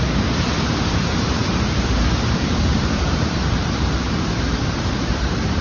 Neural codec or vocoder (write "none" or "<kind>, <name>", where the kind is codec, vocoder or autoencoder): vocoder, BigVGAN v2